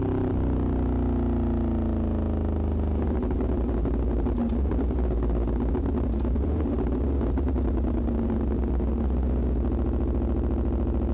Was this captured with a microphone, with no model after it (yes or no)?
yes